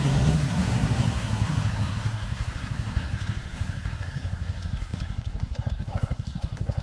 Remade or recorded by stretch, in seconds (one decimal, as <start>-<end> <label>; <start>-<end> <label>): 0.0-6.8 remade